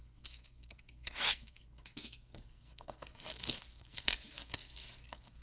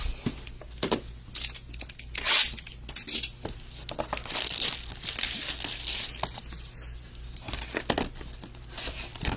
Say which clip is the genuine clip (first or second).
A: second